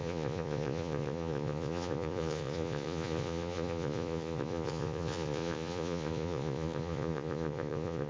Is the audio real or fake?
fake